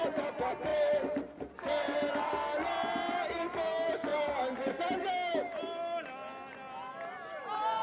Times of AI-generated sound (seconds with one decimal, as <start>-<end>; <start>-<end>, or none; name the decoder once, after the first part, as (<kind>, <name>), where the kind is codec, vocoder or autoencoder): 0.7-2.3 (vocoder, BigVGAN v2); 4.1-4.7